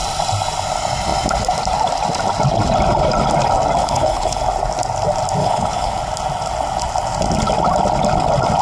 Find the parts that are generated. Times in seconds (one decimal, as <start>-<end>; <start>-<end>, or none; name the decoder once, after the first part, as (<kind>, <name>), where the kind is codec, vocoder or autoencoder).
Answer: 3.8-4.4 (codec, HILCodec); 5.4-6.0